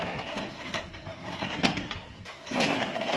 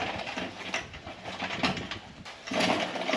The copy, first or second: first